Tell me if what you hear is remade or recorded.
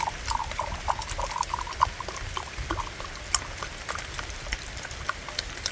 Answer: recorded